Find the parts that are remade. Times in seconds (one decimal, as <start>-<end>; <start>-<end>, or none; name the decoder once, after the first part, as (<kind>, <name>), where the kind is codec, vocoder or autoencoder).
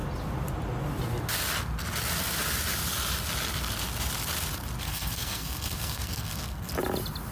4.8-6.7 (codec, SNAC)